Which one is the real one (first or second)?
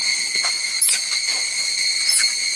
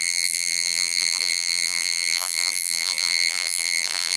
first